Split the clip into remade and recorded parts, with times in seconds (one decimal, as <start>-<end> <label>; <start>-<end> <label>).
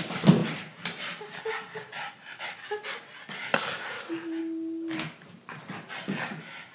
0.0-6.7 recorded